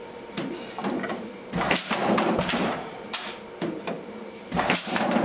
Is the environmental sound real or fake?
fake